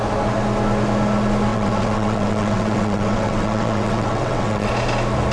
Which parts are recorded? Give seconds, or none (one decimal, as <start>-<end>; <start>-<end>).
0.0-1.5; 4.7-5.3